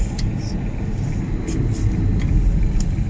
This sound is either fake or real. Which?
real